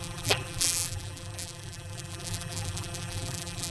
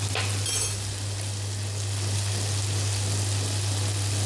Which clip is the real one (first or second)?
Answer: second